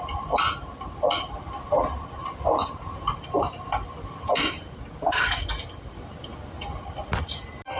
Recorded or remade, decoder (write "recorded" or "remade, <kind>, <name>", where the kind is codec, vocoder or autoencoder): recorded